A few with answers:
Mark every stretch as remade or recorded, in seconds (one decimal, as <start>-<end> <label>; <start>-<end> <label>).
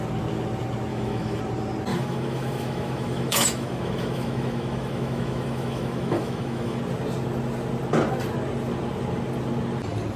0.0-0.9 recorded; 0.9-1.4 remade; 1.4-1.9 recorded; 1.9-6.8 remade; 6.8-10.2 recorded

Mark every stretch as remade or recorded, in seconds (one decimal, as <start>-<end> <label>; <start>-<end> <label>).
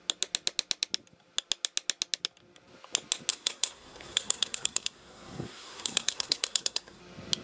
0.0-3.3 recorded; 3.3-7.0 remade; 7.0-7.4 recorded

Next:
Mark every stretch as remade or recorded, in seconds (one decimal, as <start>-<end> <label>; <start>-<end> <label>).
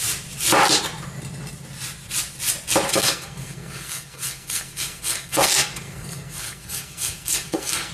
0.0-2.9 recorded; 2.9-7.9 remade